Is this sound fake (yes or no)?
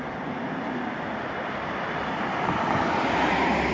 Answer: yes